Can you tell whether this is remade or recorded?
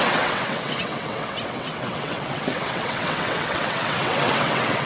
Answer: remade